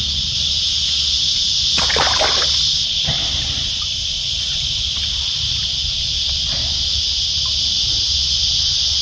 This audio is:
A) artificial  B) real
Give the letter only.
B